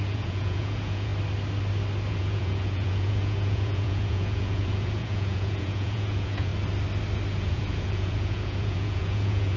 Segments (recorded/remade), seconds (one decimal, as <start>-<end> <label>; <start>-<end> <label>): 0.0-1.1 remade; 1.1-2.1 recorded; 2.1-6.5 remade; 6.5-7.3 recorded; 7.3-9.6 remade